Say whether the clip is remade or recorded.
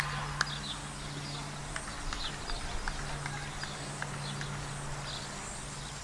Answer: recorded